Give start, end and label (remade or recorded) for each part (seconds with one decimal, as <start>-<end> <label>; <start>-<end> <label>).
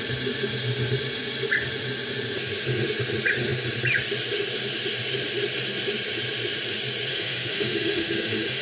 0.0-7.1 recorded; 7.1-8.6 remade